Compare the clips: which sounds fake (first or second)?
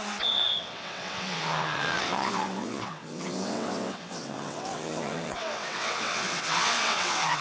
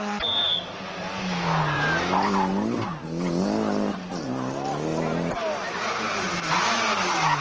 first